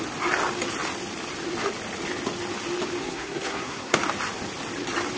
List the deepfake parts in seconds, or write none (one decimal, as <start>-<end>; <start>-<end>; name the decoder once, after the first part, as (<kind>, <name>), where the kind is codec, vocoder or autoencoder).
3.0-4.0 (codec, SNAC)